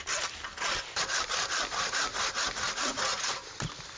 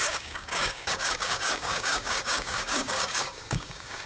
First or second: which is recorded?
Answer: first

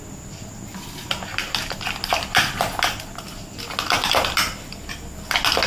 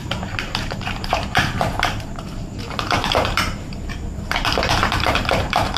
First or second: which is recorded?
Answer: first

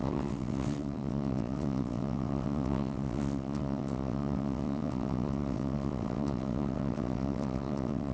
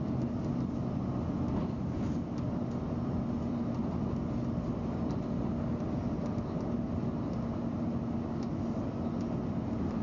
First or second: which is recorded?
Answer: second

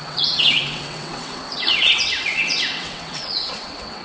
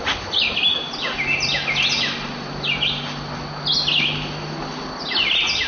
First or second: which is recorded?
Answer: second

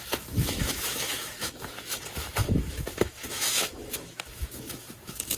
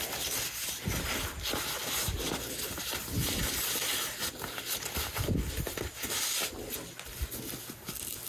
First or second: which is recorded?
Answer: second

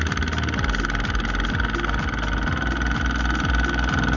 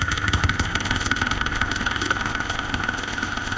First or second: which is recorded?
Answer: first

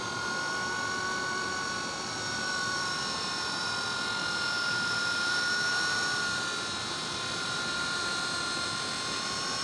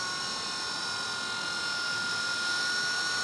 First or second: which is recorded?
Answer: second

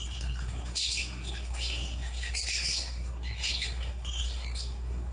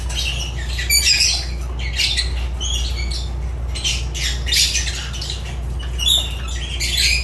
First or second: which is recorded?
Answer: second